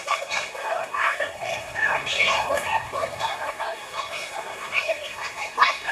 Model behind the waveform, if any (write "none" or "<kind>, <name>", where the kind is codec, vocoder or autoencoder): codec, SNAC